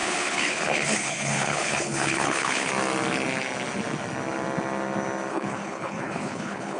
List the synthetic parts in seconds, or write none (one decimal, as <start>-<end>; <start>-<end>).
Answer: 0.0-2.7; 5.3-6.8